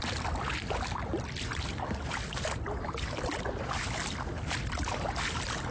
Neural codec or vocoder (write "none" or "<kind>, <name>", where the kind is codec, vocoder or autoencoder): none